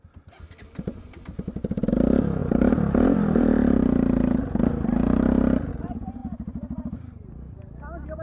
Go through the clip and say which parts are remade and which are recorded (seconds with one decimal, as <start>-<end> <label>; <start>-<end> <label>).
0.0-2.4 recorded; 2.4-5.7 remade; 5.7-6.2 recorded; 6.2-8.2 remade